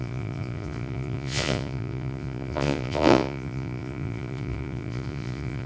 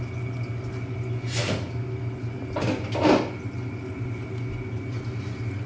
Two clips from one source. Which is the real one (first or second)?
second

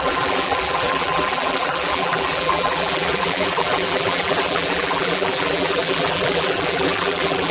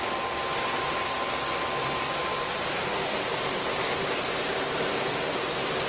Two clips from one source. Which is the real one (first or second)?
second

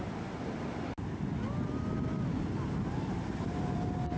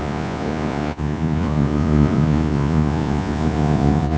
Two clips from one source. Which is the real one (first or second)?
first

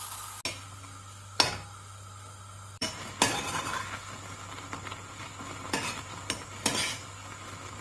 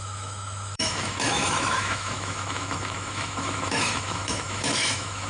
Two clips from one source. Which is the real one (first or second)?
first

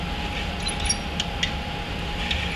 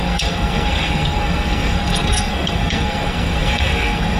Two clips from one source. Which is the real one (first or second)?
first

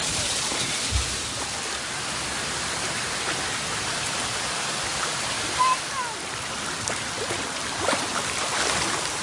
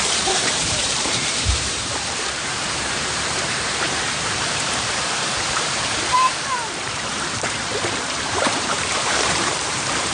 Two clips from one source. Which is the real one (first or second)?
first